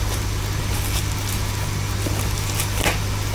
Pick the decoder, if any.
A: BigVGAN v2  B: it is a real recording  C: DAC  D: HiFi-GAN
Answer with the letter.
B